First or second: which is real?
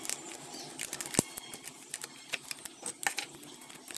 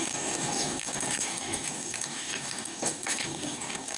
first